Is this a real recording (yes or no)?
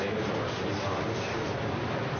yes